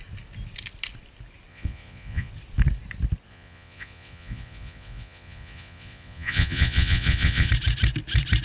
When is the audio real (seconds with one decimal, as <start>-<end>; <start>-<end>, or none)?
0.0-1.5; 2.3-3.3; 7.5-8.4